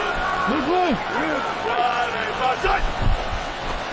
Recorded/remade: remade